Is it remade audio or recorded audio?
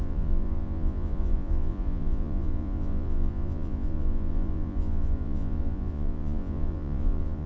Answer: remade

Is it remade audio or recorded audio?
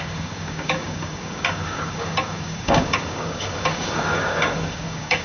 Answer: remade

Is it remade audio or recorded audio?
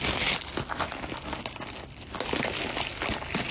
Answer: recorded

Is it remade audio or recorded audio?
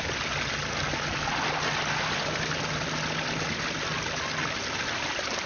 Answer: recorded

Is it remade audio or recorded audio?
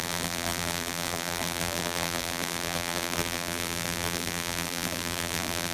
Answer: remade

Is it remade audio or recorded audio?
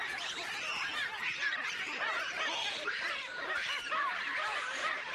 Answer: remade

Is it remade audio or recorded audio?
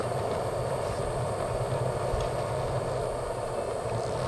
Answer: recorded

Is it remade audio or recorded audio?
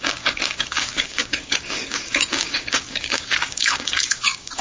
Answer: remade